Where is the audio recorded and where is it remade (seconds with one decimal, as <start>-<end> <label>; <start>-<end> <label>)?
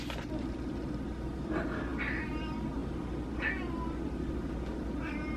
0.0-5.4 recorded